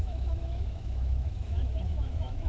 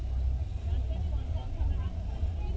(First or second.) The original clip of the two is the second